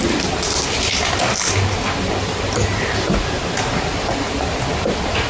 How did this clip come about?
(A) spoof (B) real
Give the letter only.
B